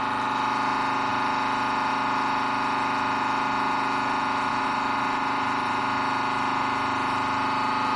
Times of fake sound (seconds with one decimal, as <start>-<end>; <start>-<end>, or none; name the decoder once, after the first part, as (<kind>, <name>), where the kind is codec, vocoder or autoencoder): 4.5-5.8 (vocoder, BigVGAN v2)